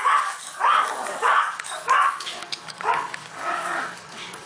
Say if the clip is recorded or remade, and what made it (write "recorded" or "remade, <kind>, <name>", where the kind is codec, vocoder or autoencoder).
remade, codec, DAC